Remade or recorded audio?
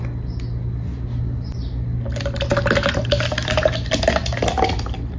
recorded